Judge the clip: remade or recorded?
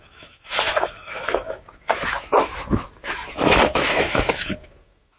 remade